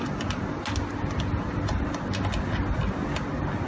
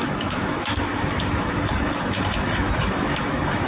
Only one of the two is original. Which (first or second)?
first